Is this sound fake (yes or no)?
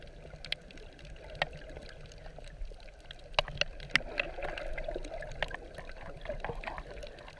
no